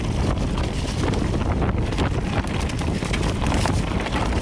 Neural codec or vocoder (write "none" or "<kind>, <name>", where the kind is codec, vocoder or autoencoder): none